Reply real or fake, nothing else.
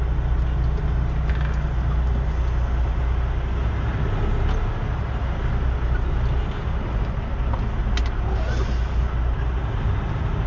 real